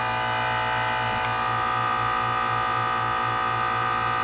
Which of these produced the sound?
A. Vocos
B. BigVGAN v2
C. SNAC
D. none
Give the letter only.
D